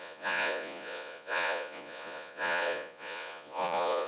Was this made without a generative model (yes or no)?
no